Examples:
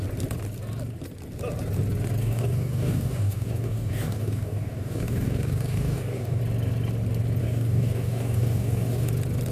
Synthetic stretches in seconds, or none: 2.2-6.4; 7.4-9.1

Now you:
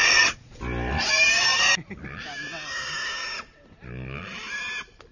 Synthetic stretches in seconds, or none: 0.0-0.6

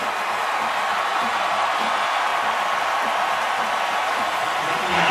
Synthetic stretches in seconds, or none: 1.1-1.8

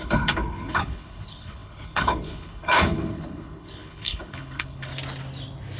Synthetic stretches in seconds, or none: 0.0-4.9